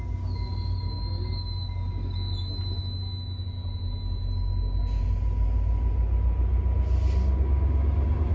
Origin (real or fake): real